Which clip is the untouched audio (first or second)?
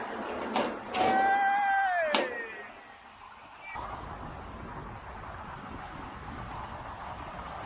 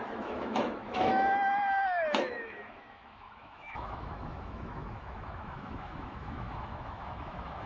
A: first